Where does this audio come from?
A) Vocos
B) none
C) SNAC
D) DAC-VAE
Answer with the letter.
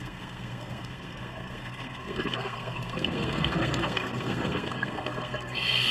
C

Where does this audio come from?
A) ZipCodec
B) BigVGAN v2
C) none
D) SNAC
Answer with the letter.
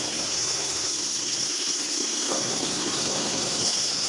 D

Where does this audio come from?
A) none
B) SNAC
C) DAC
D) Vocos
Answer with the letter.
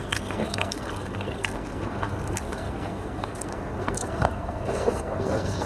B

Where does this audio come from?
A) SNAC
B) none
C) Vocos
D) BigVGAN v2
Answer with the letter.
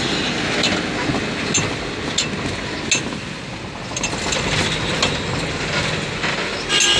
B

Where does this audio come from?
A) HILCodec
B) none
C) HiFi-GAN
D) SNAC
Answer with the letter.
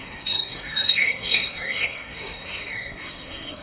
D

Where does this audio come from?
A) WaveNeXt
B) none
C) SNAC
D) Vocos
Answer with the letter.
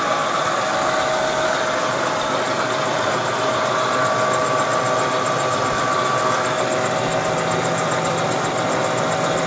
B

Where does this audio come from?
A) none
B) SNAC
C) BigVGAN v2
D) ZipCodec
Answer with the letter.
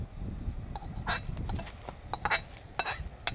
A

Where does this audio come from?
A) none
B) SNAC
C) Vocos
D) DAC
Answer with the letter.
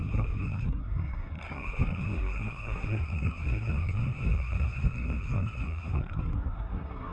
B